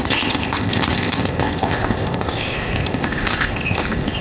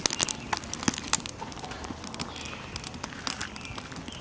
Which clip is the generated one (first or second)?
first